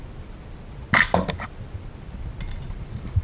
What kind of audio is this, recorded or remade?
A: recorded